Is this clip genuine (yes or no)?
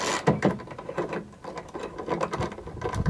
yes